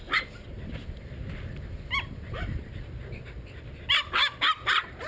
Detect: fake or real real